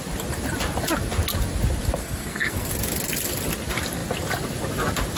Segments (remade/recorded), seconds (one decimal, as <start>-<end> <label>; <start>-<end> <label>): 0.0-2.0 recorded; 2.0-2.7 remade; 2.7-5.2 recorded